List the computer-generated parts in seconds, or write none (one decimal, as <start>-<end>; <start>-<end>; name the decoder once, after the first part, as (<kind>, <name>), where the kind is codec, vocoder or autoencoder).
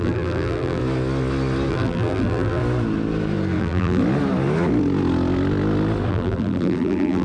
0.0-0.8 (vocoder, BigVGAN v2); 1.7-2.6; 3.6-4.0; 6.1-7.2